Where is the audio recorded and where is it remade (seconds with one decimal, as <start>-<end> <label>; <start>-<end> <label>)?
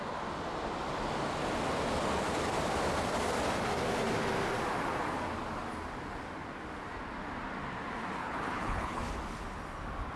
0.0-8.2 recorded; 8.2-9.0 remade; 9.0-10.2 recorded